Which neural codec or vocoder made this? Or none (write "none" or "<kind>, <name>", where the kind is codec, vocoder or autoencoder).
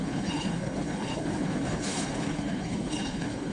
codec, HILCodec